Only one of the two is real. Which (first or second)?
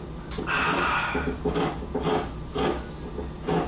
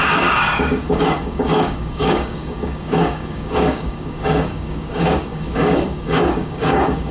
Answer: first